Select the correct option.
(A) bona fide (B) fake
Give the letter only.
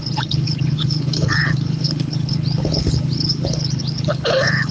B